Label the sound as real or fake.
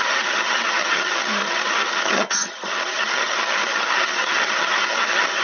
fake